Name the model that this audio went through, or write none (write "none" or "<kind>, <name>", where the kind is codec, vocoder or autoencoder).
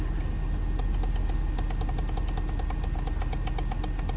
none